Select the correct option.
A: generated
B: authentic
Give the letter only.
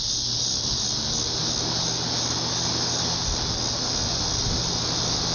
B